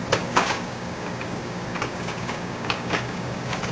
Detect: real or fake fake